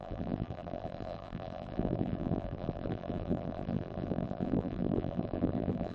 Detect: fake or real fake